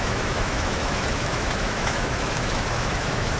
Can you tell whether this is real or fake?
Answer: fake